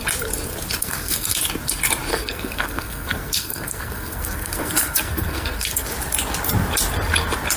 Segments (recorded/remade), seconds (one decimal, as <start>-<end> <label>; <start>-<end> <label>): 0.0-0.8 recorded; 0.8-1.4 remade; 1.4-2.1 recorded; 2.1-5.9 remade; 5.9-7.6 recorded